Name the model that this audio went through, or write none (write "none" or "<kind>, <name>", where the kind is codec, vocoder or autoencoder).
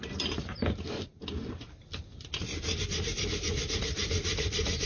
none